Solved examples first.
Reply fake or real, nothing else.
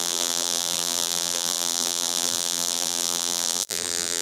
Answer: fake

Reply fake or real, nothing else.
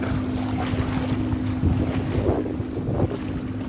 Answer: real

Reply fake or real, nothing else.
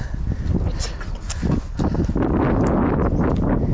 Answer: real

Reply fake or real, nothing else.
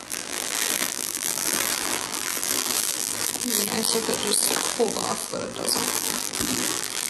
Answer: fake